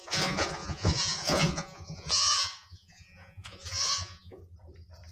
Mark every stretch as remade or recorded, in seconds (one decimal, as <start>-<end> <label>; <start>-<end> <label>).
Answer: 0.0-4.4 remade; 4.4-5.1 recorded